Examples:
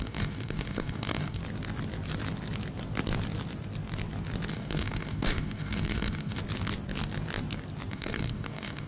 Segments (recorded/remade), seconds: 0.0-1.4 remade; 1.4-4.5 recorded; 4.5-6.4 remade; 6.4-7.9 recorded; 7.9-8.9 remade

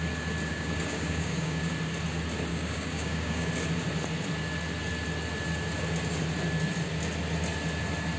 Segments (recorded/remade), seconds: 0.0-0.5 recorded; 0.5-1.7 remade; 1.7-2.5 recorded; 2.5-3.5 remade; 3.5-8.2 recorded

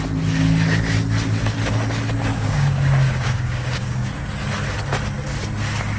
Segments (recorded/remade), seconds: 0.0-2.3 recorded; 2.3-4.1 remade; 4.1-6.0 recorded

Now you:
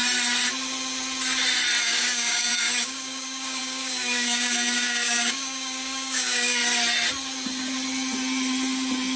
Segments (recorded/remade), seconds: 0.0-1.8 recorded; 1.8-6.6 remade; 6.6-9.2 recorded